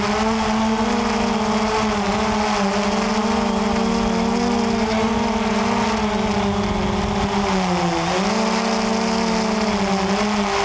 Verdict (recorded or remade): recorded